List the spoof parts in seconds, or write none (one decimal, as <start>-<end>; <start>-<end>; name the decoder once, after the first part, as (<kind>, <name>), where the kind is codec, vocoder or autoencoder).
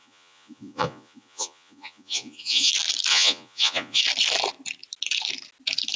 0.0-2.7 (vocoder, Vocos); 3.1-4.0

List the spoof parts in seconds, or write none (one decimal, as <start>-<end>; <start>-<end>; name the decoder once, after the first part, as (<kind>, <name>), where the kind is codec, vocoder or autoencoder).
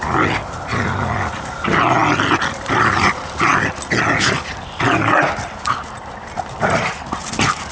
none